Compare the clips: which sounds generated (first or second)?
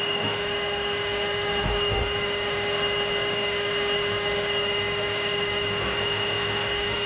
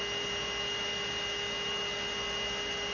first